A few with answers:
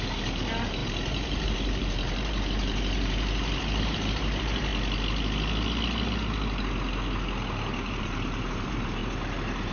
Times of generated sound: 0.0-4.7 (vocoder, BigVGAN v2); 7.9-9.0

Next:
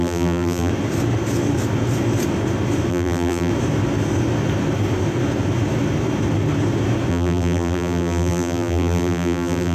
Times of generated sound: 0.0-0.7 (vocoder, BigVGAN v2); 2.9-3.5; 7.1-9.7

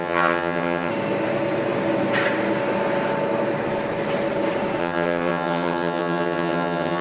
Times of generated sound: 0.0-0.9 (vocoder, HiFi-GAN); 4.8-7.0

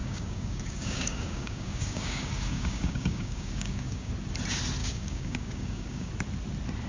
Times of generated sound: 0.0-4.1 (codec, DAC); 4.8-6.1

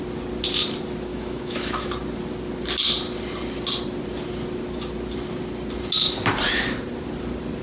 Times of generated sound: 1.1-1.9 (autoencoder, DAC-VAE)

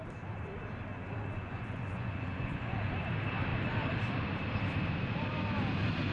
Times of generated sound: 0.9-2.9 (vocoder, Vocos)